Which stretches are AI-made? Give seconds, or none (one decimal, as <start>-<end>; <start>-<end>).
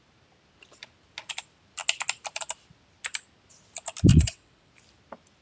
4.1-4.7